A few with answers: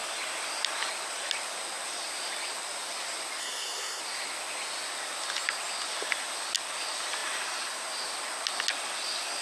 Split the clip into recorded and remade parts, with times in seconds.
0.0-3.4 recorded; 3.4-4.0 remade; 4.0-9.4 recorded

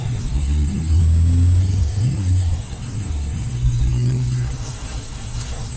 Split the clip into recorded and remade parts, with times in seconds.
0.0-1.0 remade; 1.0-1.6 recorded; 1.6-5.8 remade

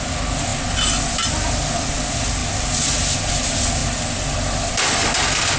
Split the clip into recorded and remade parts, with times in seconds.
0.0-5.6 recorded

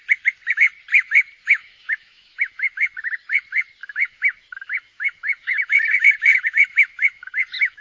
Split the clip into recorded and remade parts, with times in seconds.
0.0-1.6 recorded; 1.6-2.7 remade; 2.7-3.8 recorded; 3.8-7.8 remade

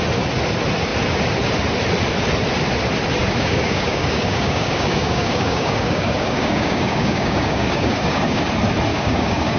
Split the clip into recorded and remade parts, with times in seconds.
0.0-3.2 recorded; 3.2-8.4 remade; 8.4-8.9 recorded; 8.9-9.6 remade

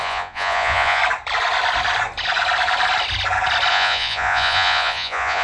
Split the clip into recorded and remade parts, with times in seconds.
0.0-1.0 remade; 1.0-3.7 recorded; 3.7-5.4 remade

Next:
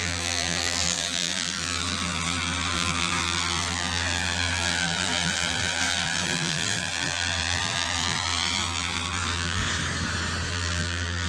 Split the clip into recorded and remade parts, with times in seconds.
0.0-9.6 remade; 9.6-10.5 recorded; 10.5-11.3 remade